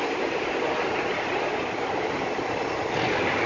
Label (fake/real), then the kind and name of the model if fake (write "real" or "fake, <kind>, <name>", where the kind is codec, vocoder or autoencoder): real